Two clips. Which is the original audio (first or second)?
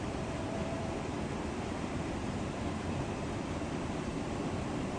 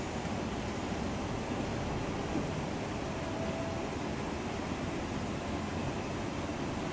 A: second